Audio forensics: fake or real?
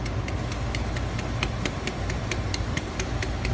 real